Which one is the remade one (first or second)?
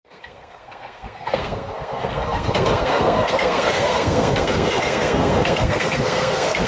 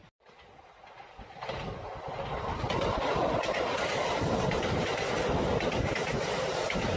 first